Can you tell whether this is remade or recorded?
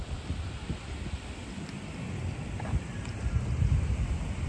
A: recorded